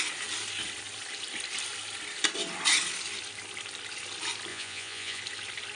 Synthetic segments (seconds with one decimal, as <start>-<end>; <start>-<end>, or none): 4.5-5.2